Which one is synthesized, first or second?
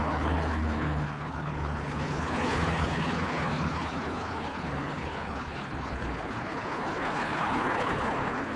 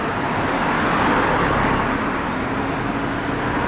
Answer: first